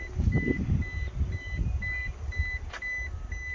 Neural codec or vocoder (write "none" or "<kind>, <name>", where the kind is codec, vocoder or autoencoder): none